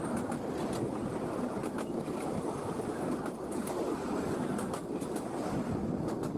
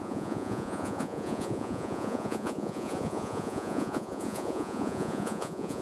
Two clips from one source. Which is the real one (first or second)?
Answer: first